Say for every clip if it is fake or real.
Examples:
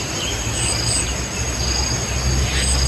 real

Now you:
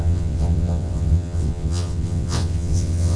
fake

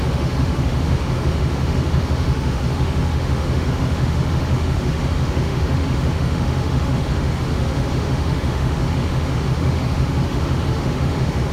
fake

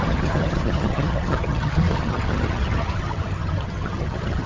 fake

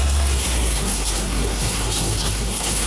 fake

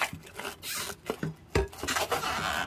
real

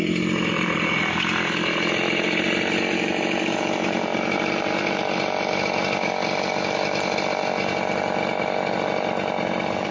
real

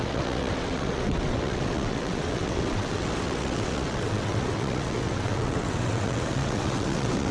fake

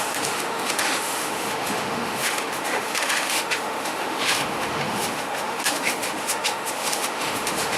fake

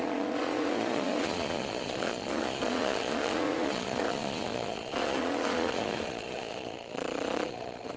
fake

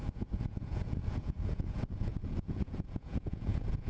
fake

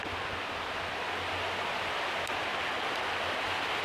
real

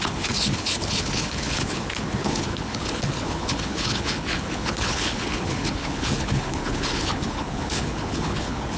fake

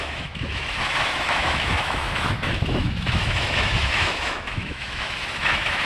fake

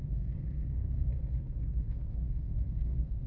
fake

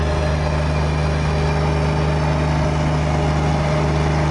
real